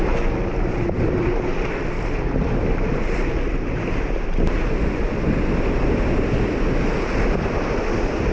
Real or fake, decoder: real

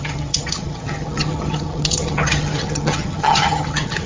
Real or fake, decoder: fake, vocoder, HiFi-GAN